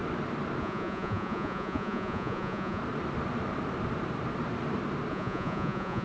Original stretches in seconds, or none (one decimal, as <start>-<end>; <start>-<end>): 0.0-0.6; 2.8-5.1